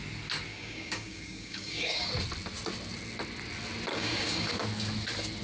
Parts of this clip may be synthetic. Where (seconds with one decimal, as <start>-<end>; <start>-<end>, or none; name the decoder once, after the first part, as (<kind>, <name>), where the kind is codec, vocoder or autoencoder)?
0.5-2.1 (codec, DAC); 3.9-4.5